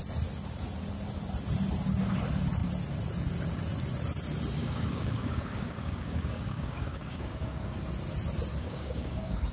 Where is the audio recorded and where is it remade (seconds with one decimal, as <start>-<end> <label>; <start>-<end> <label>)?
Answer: 0.0-4.6 recorded; 4.6-7.9 remade; 7.9-8.5 recorded; 8.5-9.5 remade